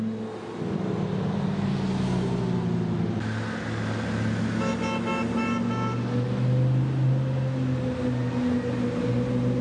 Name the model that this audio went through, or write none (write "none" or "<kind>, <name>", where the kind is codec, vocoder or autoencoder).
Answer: none